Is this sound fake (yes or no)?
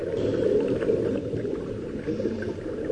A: yes